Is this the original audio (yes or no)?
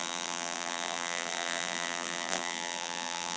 no